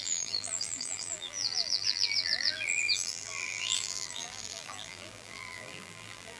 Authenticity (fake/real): fake